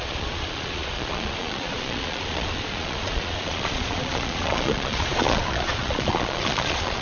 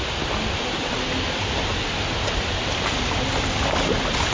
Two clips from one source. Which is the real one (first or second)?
second